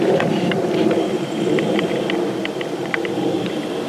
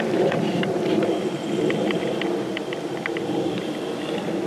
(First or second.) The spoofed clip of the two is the first